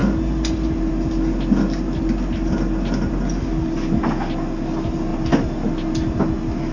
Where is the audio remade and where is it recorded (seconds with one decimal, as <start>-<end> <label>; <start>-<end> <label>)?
0.0-6.7 recorded